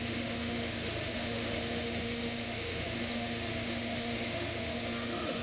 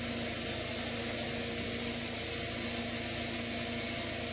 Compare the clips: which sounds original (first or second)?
second